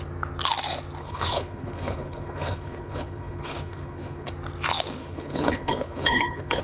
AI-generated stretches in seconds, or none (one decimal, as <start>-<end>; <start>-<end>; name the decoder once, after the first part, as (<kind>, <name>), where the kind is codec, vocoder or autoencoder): 1.0-4.3 (codec, HILCodec); 5.0-6.6